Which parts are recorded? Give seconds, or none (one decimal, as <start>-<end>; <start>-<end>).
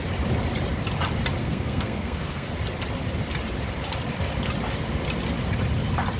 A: 0.0-1.4; 2.5-6.2